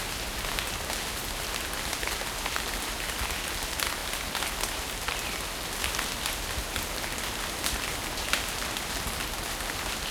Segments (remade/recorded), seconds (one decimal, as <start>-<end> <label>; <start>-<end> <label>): 0.0-10.1 recorded